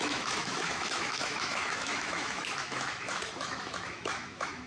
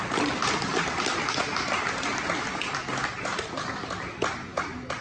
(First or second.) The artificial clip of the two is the first